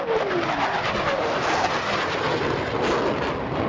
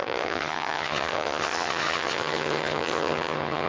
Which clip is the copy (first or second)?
second